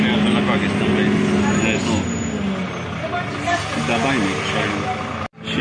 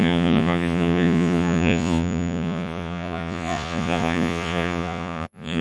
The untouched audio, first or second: first